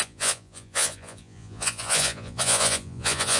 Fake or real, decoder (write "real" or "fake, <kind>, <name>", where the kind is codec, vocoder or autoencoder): fake, vocoder, Vocos